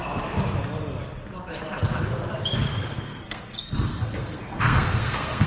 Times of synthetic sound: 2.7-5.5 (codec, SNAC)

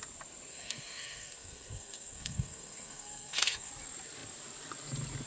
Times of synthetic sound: 0.5-3.7 (codec, SNAC)